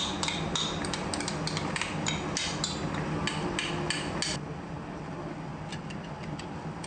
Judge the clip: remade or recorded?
recorded